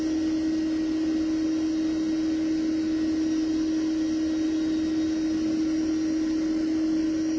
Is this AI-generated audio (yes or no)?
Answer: no